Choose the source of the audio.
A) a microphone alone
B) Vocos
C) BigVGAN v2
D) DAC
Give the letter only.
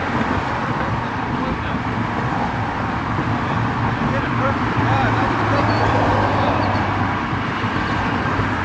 C